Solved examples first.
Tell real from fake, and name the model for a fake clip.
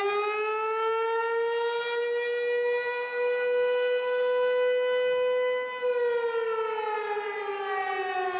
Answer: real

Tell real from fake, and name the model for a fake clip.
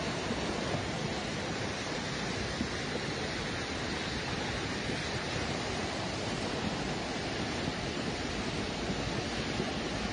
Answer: real